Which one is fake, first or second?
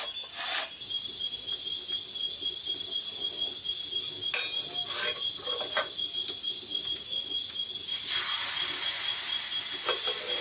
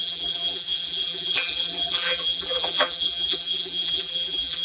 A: second